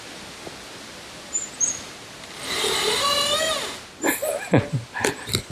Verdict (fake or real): real